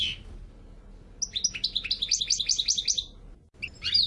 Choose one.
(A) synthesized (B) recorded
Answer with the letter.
B